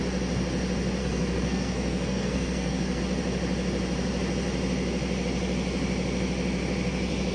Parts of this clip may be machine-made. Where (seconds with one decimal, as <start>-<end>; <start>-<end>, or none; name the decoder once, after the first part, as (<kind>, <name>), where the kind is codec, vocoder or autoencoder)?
1.0-3.0 (codec, SNAC)

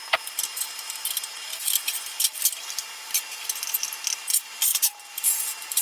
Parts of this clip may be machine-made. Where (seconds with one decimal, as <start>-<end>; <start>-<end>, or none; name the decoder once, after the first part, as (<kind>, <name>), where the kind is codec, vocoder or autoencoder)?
4.7-5.8 (vocoder, BigVGAN v2)

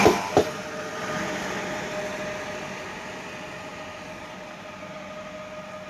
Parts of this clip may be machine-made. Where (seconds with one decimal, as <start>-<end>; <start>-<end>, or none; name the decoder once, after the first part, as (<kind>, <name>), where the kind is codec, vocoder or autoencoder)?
none

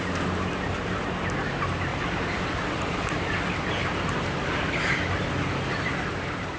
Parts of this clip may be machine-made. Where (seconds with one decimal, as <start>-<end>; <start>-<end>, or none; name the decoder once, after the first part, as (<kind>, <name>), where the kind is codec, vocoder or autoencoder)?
1.9-5.3 (vocoder, BigVGAN v2)

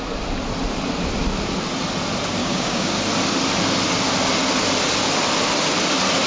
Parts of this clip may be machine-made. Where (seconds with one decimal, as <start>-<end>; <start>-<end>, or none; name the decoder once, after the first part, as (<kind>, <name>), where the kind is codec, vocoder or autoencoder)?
2.4-3.0 (codec, DAC)

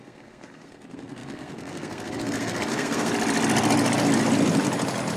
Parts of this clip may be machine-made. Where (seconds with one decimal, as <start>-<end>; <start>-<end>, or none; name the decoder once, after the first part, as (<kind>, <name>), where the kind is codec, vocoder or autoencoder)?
0.0-3.1 (codec, SNAC)

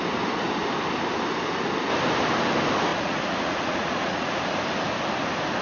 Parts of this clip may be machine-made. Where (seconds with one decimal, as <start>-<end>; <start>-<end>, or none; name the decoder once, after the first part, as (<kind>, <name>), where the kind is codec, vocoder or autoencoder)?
2.9-4.4 (vocoder, Vocos)

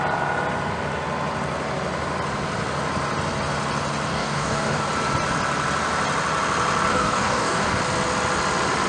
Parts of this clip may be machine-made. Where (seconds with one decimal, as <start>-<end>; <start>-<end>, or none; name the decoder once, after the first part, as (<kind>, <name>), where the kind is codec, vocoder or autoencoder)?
4.1-4.9 (codec, DAC); 6.9-7.8